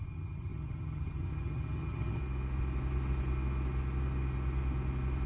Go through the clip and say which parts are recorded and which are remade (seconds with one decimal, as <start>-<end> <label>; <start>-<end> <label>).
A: 0.0-2.2 remade; 2.2-5.3 recorded